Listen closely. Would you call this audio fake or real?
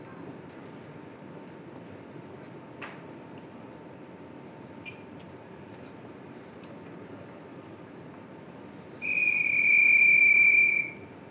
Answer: real